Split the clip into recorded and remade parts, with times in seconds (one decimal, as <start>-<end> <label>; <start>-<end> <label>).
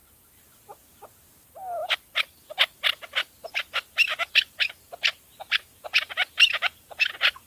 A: 0.0-4.3 recorded; 4.3-7.5 remade